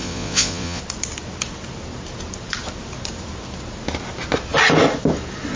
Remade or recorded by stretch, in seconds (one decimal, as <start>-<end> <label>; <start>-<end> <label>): 0.0-0.8 remade; 0.8-5.6 recorded